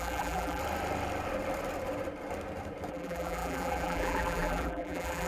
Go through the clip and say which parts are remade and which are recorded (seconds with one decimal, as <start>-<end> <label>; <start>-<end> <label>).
0.0-0.6 remade; 0.6-2.9 recorded; 2.9-5.3 remade